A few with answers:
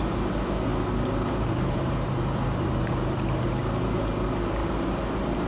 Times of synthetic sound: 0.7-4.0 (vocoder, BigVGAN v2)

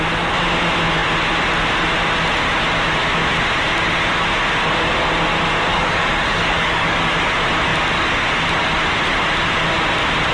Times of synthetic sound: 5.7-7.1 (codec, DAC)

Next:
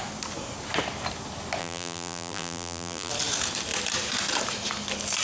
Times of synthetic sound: 1.6-3.1 (vocoder, BigVGAN v2)

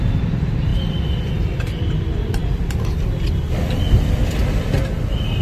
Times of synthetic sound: 0.0-5.4 (vocoder, BigVGAN v2)

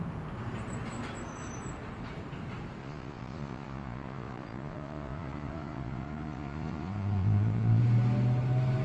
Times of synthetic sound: 2.8-7.8 (vocoder, Vocos)

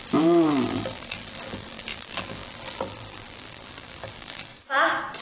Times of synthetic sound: 0.0-4.5 (vocoder, BigVGAN v2)

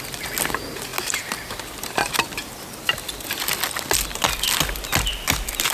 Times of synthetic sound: none

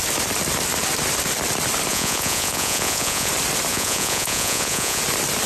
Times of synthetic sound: 1.9-3.3 (vocoder, Vocos); 3.7-5.0